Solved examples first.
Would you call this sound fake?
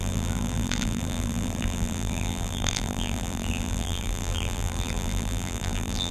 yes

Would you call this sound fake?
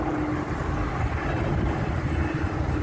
no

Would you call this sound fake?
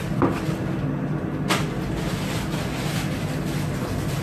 no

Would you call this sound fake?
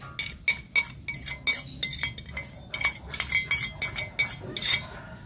no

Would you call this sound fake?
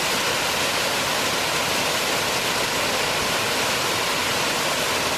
no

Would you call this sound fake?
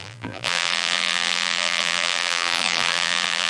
yes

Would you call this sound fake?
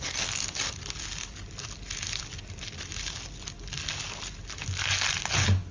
no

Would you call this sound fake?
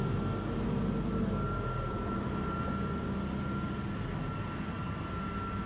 no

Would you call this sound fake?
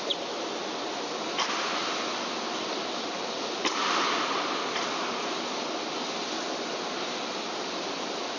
no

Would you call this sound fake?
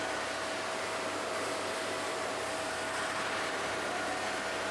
no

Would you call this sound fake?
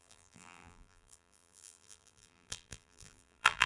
yes